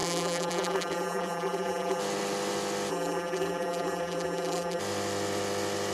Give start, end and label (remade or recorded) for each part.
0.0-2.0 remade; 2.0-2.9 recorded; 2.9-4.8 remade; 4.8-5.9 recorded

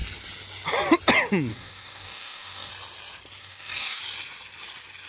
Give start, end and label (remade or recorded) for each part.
0.0-1.5 recorded; 1.5-2.7 remade; 2.7-3.4 recorded; 3.4-4.0 remade; 4.0-5.1 recorded

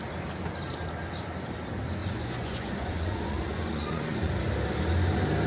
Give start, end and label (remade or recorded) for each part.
0.0-2.0 recorded; 2.0-4.3 remade; 4.3-5.5 recorded

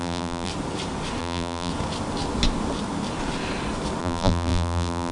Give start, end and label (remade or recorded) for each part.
0.0-0.5 remade; 0.5-1.2 recorded; 1.2-1.7 remade; 1.7-4.0 recorded; 4.0-5.1 remade